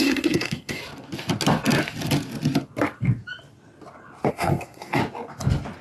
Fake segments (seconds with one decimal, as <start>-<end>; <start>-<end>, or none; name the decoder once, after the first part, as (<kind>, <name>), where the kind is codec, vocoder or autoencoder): 0.0-0.8 (codec, SNAC); 4.3-5.0